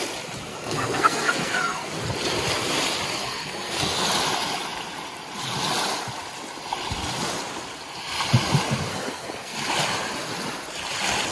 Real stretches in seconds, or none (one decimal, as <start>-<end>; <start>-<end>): 0.0-0.5; 1.9-3.2; 4.1-8.9; 9.6-11.3